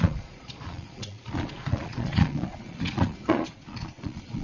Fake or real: fake